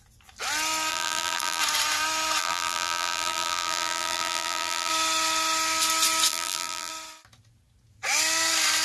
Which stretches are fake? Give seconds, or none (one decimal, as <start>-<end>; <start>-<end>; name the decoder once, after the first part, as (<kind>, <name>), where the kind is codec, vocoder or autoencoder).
0.9-1.6 (vocoder, BigVGAN v2); 2.4-4.9; 6.3-6.9